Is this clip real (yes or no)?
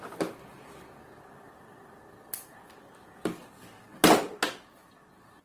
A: yes